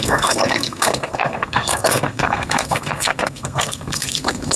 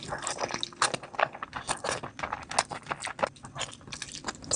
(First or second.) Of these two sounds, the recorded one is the second